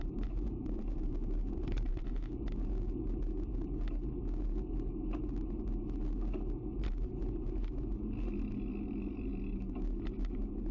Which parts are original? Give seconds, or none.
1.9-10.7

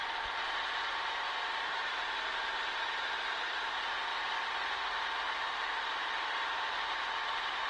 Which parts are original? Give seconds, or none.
4.1-6.0

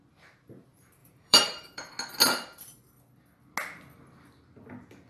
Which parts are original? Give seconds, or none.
0.0-1.0; 1.9-5.1

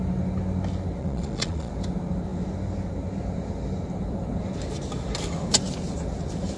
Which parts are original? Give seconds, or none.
0.0-1.0; 1.7-6.6

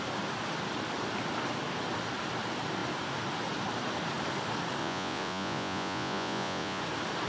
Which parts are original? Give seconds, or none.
0.0-4.8; 6.8-7.3

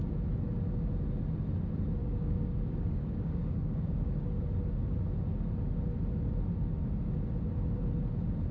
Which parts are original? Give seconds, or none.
0.0-2.0; 4.3-8.5

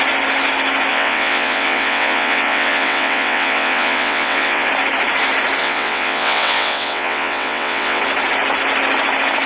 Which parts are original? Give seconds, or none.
0.0-0.9; 4.7-5.6; 8.0-9.5

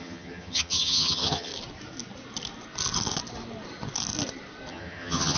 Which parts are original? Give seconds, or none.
1.5-4.7